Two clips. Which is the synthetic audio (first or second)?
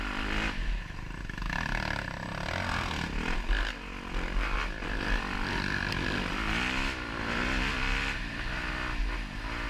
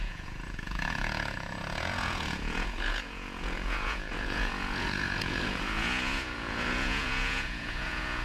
second